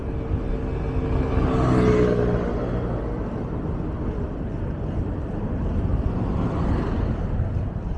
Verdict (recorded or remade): recorded